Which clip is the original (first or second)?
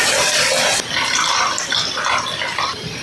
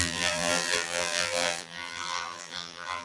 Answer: first